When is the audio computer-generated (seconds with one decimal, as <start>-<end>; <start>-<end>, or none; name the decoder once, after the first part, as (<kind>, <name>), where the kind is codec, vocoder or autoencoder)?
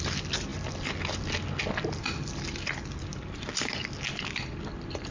none